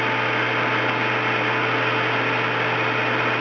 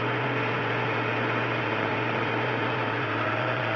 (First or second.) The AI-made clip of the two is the second